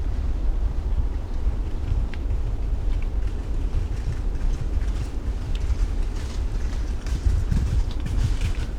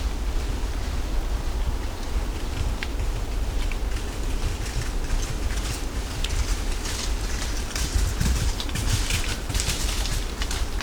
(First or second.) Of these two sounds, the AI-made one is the first